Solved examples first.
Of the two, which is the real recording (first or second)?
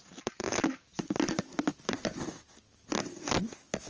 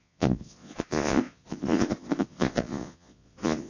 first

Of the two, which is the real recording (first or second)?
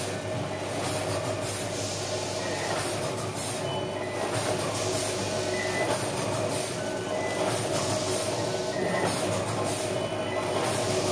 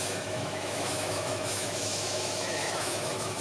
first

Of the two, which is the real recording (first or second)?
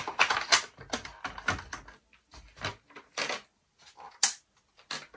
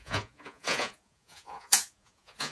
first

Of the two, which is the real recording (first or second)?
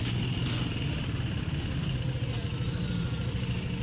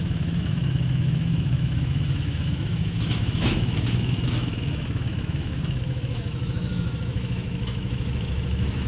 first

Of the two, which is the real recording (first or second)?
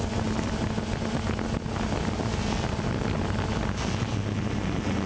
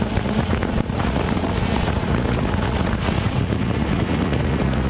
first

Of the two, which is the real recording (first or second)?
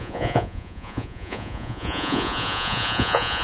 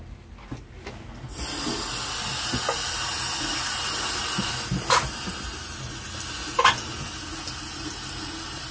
second